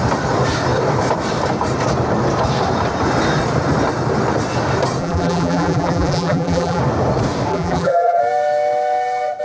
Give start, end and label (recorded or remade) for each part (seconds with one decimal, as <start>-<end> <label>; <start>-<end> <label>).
0.0-5.0 recorded; 5.0-6.8 remade; 6.8-7.5 recorded; 7.5-8.2 remade; 8.2-9.4 recorded